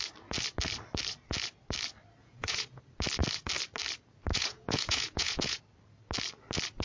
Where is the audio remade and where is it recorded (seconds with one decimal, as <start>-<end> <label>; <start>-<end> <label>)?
0.0-2.2 recorded; 2.2-2.8 remade; 2.8-4.3 recorded; 4.3-5.6 remade; 5.6-6.8 recorded